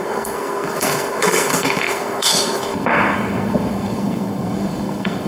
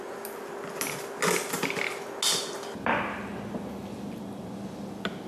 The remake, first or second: first